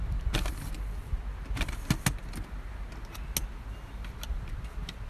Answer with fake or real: real